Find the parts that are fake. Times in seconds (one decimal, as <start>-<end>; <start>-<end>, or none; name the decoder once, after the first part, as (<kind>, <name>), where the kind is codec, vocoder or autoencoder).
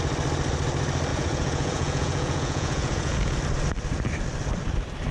1.1-3.4 (vocoder, Vocos)